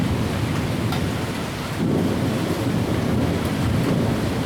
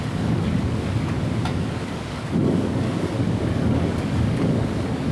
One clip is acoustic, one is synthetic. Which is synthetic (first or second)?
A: second